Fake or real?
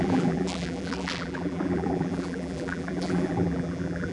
fake